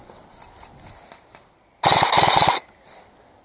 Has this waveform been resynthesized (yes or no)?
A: no